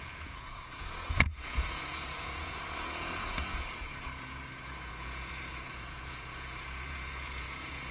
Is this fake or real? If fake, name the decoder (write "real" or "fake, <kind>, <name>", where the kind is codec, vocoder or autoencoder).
fake, vocoder, Vocos